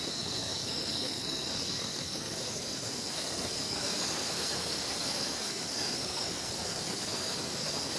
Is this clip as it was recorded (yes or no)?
no